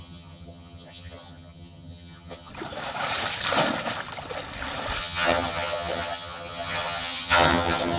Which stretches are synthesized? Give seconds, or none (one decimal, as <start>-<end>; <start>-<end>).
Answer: 0.0-2.5; 5.0-8.0